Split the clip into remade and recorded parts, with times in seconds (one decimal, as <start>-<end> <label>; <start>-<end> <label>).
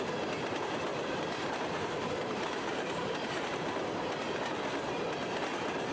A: 0.0-0.9 recorded; 0.9-3.8 remade; 3.8-5.9 recorded